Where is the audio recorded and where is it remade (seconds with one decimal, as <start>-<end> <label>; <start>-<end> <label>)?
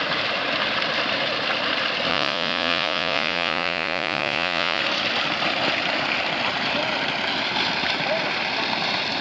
0.0-2.1 recorded; 2.1-4.8 remade; 4.8-9.2 recorded